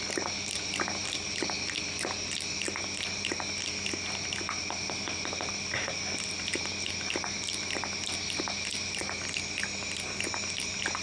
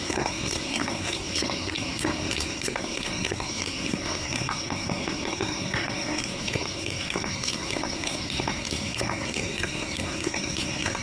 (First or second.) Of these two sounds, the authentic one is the first